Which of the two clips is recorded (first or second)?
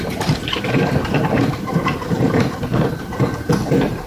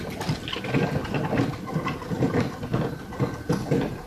second